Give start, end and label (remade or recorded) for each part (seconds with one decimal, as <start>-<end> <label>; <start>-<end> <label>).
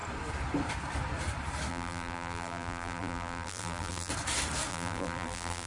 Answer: 0.0-1.7 recorded; 1.7-4.1 remade; 4.1-4.7 recorded; 4.7-5.7 remade